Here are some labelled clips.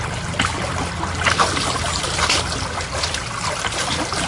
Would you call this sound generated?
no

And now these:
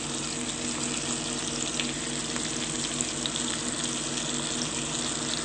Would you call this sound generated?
no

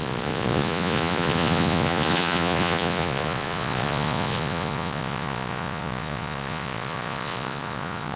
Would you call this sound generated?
yes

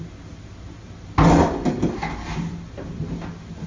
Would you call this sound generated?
no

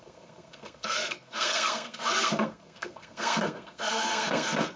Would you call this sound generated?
yes